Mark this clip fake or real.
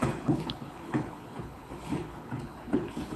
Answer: fake